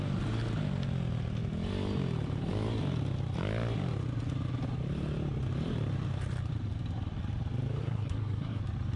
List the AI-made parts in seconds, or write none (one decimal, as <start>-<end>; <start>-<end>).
7.8-8.6